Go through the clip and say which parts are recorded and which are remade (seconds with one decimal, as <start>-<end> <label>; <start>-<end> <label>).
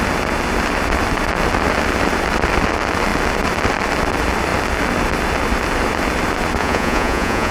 0.0-6.6 recorded; 6.6-7.5 remade